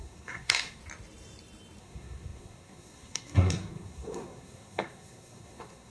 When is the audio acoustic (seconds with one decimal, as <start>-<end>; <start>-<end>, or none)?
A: 0.8-1.8